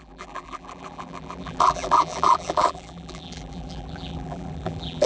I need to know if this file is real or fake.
fake